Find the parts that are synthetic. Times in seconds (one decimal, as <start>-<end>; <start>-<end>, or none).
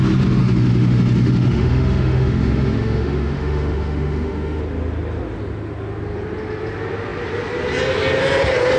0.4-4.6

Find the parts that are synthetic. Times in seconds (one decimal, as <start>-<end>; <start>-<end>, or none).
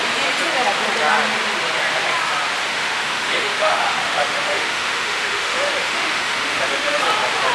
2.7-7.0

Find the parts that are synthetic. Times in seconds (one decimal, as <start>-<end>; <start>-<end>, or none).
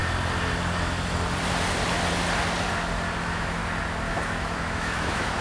3.2-3.6; 4.1-5.4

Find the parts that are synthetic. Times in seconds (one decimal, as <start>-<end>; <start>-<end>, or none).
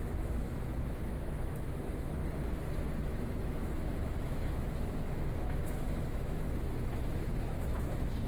0.0-2.2; 3.0-8.3